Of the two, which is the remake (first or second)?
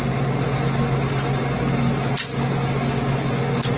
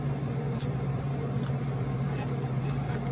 second